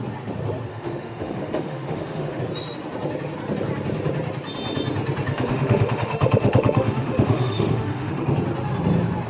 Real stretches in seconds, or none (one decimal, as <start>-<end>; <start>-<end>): 0.0-0.7; 2.4-5.3; 8.3-9.3